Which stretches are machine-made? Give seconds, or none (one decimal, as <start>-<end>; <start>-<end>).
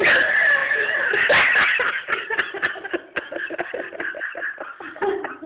none